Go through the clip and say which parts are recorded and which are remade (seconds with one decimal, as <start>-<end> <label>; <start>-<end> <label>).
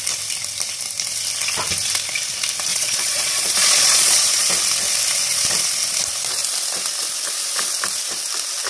0.0-2.7 recorded; 2.7-4.5 remade; 4.5-8.7 recorded